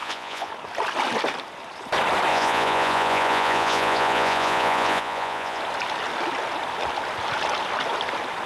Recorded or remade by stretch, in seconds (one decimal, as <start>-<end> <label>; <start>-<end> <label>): 0.0-0.5 remade; 0.5-2.3 recorded; 2.3-5.6 remade; 5.6-8.5 recorded